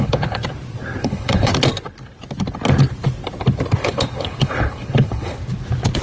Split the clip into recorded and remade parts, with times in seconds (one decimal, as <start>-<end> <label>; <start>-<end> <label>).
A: 0.0-0.4 remade; 0.4-1.0 recorded; 1.0-1.5 remade; 1.5-3.8 recorded; 3.8-5.4 remade; 5.4-6.0 recorded